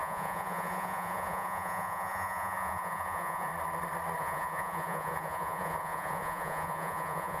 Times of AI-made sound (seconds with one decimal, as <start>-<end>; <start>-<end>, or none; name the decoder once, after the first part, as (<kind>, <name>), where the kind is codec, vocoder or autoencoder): 0.0-3.5 (vocoder, Vocos); 4.2-7.4